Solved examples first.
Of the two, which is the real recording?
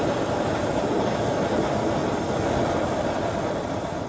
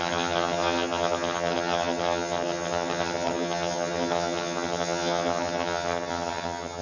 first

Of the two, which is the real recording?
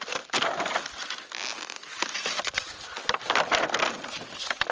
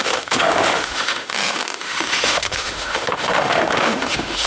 first